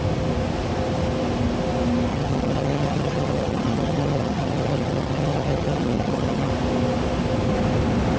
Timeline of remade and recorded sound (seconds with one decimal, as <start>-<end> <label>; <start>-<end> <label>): 0.0-2.1 recorded; 2.1-6.5 remade; 6.5-8.2 recorded